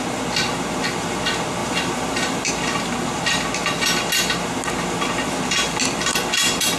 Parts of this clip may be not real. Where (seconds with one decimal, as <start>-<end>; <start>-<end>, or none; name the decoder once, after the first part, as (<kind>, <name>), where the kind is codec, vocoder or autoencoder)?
1.6-2.5 (vocoder, BigVGAN v2)